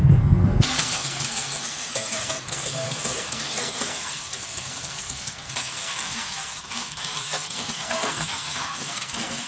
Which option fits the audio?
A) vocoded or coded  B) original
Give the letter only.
A